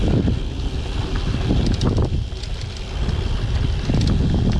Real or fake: real